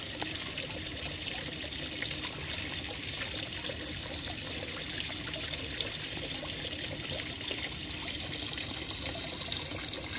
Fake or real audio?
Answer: real